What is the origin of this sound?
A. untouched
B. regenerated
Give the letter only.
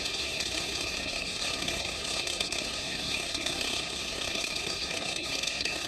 B